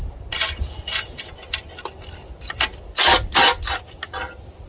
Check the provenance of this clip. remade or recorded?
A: recorded